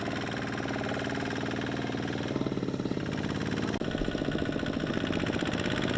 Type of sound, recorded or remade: recorded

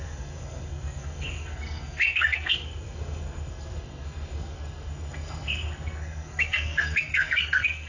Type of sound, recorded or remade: remade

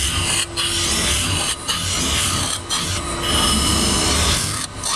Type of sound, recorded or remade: recorded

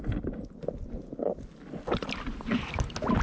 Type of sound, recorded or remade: recorded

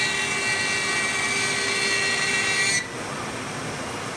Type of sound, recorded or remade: recorded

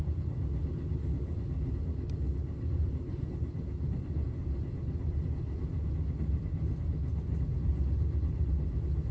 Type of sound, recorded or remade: recorded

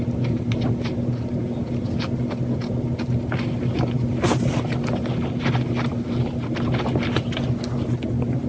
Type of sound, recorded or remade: recorded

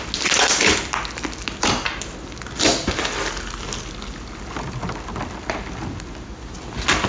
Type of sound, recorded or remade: recorded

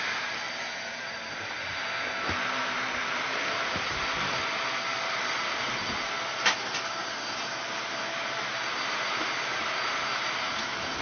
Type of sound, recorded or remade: recorded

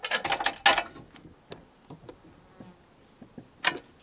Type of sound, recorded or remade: recorded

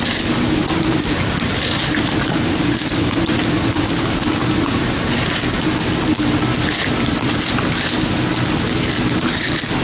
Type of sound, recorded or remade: recorded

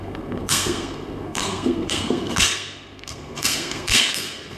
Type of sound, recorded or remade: remade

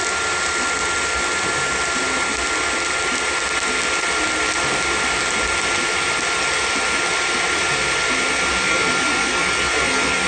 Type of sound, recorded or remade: recorded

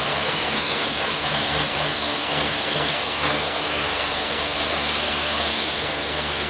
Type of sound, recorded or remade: remade